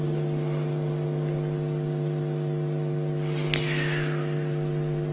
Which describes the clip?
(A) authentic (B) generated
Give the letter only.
A